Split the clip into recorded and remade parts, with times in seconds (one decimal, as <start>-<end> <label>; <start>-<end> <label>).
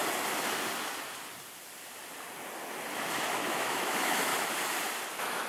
0.0-3.3 recorded; 3.3-4.3 remade; 4.3-5.1 recorded; 5.1-5.5 remade